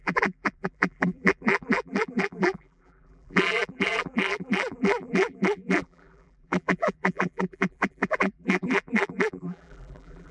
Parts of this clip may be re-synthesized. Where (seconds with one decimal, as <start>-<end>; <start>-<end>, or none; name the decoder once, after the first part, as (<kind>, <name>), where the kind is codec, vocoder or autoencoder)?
0.0-10.3 (vocoder, BigVGAN v2)